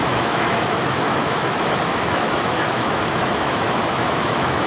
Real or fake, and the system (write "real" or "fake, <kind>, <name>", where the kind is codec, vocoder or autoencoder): fake, autoencoder, DAC-VAE